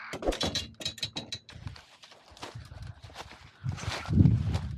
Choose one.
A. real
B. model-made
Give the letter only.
A